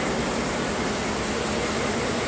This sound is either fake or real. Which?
real